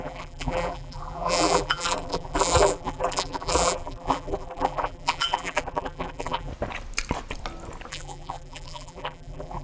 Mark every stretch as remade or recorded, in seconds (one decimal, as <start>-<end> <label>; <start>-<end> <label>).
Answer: 0.0-6.5 remade; 6.5-7.9 recorded; 7.9-9.6 remade